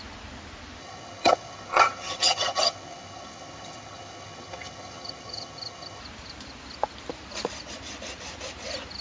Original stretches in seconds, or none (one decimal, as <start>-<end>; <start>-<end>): 0.0-0.8; 6.0-9.0